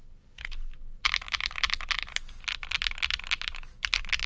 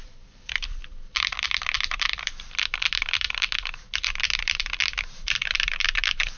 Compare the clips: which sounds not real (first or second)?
second